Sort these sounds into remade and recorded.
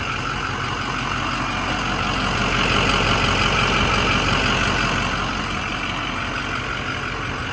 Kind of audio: recorded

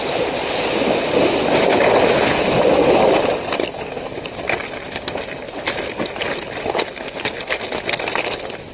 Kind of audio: recorded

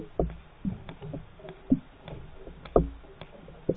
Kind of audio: recorded